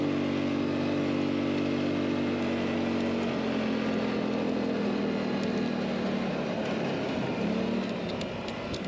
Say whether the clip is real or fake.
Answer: real